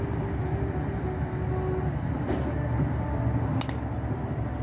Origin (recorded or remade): recorded